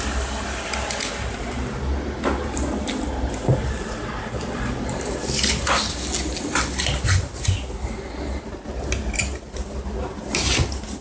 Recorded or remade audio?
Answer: recorded